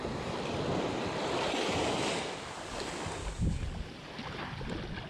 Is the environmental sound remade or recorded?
recorded